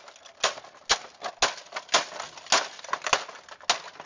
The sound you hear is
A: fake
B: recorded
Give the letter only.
B